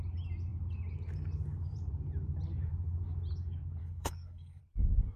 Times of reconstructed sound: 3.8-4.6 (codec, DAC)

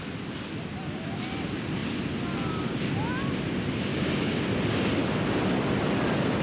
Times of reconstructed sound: 3.9-4.4 (codec, DAC)

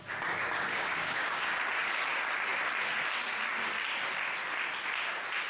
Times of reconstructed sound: 0.7-1.4 (codec, DAC)